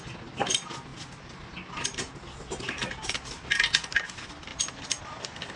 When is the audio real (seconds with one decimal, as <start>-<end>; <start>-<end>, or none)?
0.0-4.5; 5.0-5.6

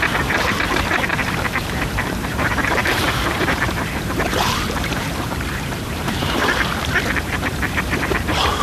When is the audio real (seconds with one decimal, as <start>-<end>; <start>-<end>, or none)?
6.7-7.2

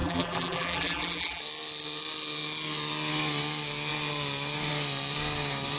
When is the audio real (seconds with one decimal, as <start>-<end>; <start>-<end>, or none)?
1.4-5.8

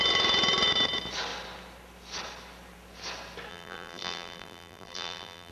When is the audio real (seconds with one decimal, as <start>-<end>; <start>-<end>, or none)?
0.0-3.5

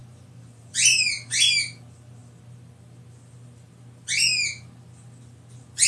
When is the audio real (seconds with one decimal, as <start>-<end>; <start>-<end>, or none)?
2.2-5.9